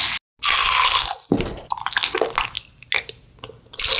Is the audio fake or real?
real